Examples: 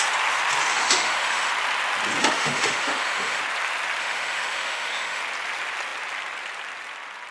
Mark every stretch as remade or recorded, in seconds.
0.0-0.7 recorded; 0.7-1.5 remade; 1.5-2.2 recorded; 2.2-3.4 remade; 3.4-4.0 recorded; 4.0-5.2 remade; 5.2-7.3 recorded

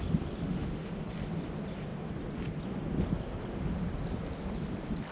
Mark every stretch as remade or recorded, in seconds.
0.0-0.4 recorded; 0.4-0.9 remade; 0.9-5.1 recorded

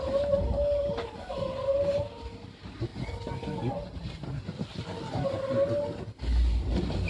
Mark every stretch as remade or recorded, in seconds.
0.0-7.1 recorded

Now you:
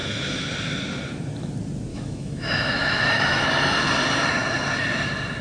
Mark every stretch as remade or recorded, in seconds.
0.0-0.5 remade; 0.5-1.9 recorded; 1.9-3.5 remade; 3.5-5.4 recorded

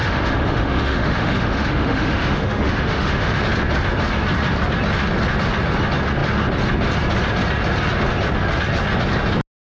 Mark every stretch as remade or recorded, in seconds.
0.0-3.3 remade; 3.3-9.6 recorded

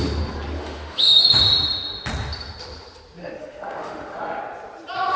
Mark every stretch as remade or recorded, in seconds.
0.0-0.6 recorded; 0.6-1.4 remade; 1.4-3.2 recorded; 3.2-4.4 remade; 4.4-5.2 recorded

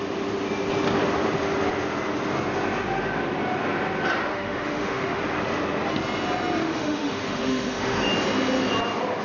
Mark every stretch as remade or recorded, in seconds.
0.0-4.3 recorded; 4.3-5.2 remade; 5.2-6.6 recorded; 6.6-8.1 remade; 8.1-9.2 recorded